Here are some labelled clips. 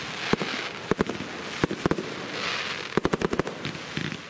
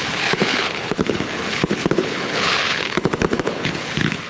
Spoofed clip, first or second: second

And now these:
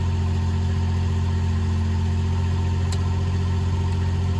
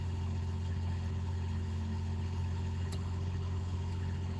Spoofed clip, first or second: second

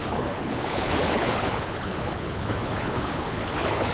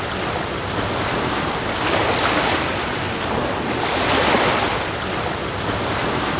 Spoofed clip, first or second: first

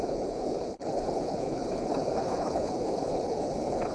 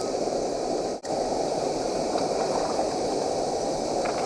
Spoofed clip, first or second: first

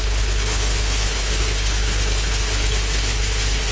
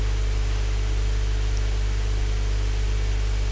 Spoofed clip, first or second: first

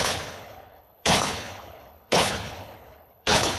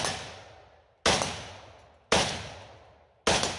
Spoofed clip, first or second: first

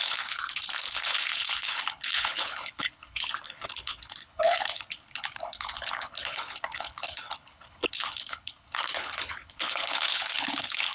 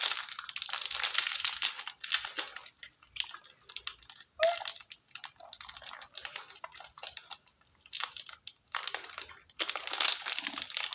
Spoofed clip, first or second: first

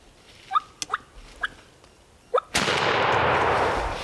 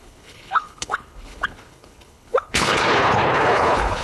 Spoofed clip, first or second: second